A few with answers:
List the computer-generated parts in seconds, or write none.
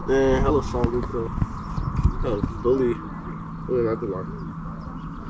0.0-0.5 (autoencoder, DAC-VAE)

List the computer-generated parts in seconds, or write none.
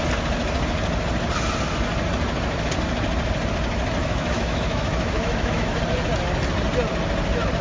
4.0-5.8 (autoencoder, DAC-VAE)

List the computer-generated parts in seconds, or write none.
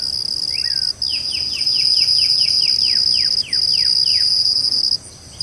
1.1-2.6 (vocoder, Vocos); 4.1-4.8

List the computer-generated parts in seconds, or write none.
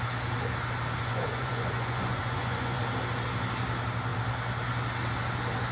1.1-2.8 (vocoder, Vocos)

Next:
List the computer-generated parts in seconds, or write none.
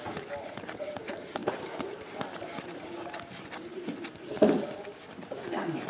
1.4-2.6 (vocoder, BigVGAN v2); 3.7-4.4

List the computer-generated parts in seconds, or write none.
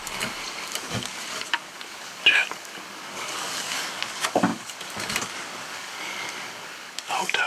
0.0-7.5 (codec, DAC)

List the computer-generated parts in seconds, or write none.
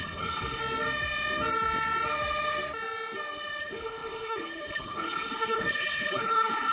0.0-0.6 (codec, HILCodec); 3.6-6.7